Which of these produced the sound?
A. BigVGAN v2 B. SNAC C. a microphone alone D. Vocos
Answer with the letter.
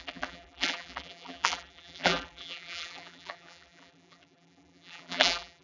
A